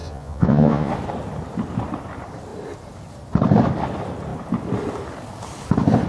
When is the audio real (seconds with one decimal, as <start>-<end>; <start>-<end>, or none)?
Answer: 0.9-6.1